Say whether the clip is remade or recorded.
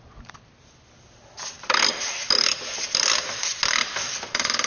recorded